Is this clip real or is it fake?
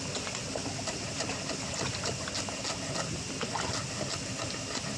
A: real